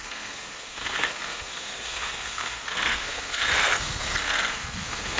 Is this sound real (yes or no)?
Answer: no